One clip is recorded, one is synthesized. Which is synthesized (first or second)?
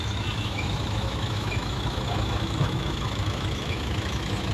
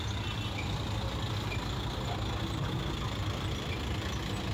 first